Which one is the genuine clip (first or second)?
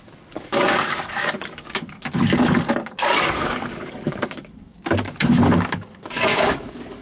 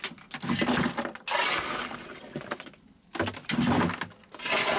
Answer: second